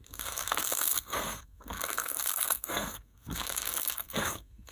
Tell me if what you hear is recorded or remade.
remade